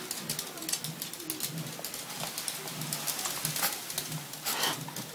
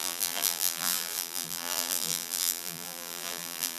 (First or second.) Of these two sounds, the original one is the first